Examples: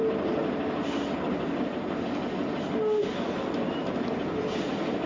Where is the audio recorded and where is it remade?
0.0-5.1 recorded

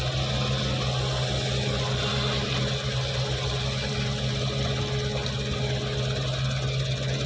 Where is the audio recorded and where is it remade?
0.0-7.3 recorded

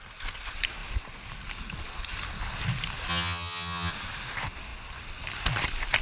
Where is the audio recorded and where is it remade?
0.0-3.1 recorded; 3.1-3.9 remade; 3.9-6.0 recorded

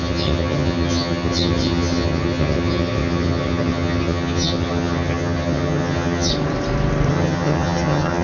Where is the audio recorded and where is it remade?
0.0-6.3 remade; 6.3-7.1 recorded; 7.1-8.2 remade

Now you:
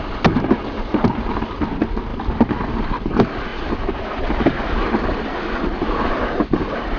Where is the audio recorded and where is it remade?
0.0-7.0 recorded